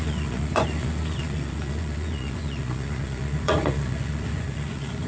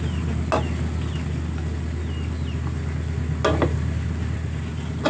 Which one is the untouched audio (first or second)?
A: second